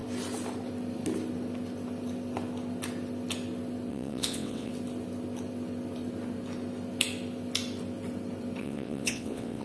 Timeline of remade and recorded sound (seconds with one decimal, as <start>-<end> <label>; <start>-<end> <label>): 0.0-3.9 recorded; 3.9-4.7 remade; 4.7-8.6 recorded; 8.6-9.6 remade